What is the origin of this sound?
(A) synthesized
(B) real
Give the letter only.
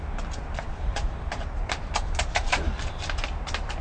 B